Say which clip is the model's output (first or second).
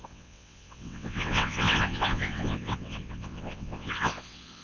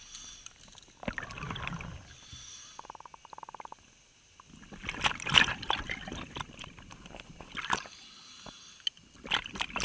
first